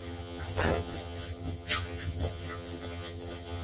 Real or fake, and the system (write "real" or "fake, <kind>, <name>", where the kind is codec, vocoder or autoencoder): fake, vocoder, HiFi-GAN